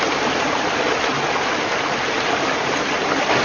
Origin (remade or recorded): recorded